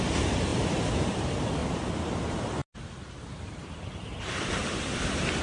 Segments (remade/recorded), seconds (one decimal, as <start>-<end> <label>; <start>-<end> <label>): 0.0-1.6 remade; 1.6-2.2 recorded; 2.2-5.4 remade